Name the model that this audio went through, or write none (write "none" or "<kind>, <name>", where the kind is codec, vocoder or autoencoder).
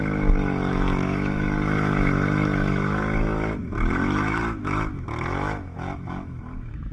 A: autoencoder, DAC-VAE